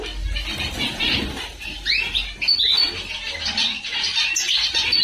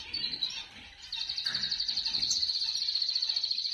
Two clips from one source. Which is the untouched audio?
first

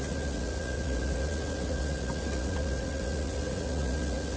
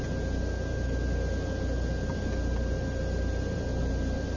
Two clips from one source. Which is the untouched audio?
second